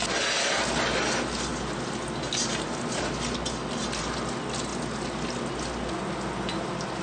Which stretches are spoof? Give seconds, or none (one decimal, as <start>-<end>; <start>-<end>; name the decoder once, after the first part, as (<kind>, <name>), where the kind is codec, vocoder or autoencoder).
none